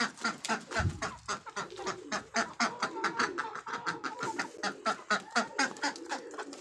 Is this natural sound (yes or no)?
yes